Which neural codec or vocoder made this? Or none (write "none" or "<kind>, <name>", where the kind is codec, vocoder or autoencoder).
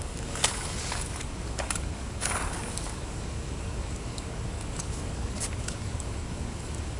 codec, DAC